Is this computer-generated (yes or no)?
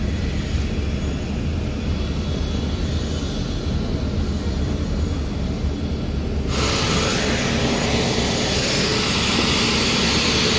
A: no